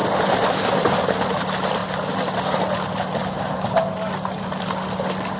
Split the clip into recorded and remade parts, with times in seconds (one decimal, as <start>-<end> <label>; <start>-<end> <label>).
0.0-0.6 remade; 0.6-5.4 recorded